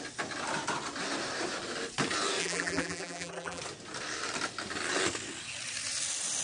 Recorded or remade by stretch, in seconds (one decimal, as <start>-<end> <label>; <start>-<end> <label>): 0.0-2.4 recorded; 2.4-3.6 remade; 3.6-6.4 recorded